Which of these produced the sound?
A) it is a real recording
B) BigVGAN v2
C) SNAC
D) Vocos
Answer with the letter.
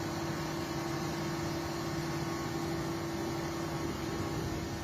A